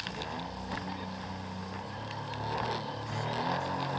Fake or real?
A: real